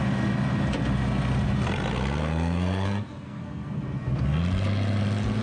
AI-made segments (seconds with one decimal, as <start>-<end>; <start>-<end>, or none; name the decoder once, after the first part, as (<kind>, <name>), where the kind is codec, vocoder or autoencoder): 2.2-4.4 (codec, SNAC)